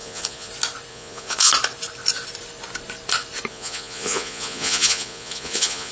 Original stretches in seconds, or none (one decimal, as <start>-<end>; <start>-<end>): 0.5-0.9; 1.5-3.5